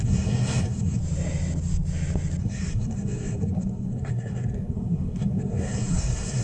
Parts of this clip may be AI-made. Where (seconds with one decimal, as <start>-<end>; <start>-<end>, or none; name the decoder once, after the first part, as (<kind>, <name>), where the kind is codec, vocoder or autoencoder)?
0.0-1.0 (codec, SNAC); 2.4-6.4